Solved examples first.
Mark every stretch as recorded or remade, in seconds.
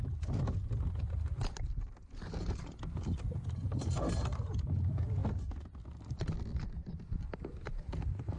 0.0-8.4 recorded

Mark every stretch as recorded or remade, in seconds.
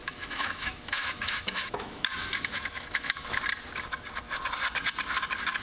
0.0-3.4 remade; 3.4-5.6 recorded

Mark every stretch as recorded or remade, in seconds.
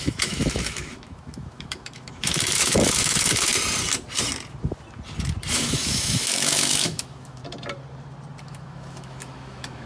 0.0-3.5 remade; 3.5-5.5 recorded; 5.5-7.4 remade; 7.4-8.4 recorded; 8.4-9.9 remade